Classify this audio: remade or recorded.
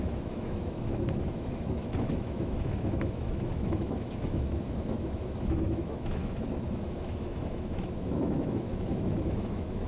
remade